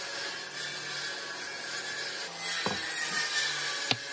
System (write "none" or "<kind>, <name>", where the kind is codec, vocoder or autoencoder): none